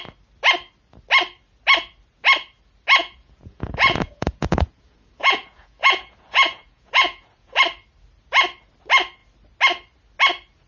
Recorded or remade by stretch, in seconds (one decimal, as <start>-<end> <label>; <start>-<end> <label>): 0.0-3.0 recorded; 3.0-7.6 remade; 7.6-10.7 recorded